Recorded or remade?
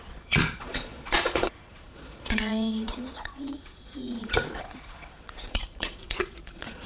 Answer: remade